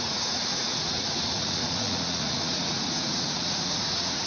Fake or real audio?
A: fake